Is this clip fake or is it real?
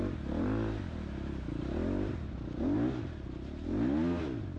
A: real